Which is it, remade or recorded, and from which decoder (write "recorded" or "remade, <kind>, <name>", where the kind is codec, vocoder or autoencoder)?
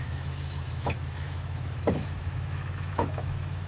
remade, autoencoder, DAC-VAE